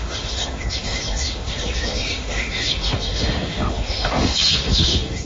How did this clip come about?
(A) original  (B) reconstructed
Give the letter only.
B